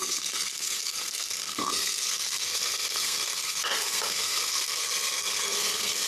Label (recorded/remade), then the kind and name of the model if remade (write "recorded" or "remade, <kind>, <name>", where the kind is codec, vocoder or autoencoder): remade, codec, SNAC